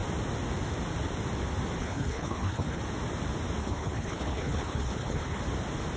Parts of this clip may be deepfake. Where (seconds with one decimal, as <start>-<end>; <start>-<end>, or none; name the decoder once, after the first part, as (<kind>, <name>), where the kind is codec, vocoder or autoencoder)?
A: 1.8-2.8 (codec, HILCodec); 3.6-5.4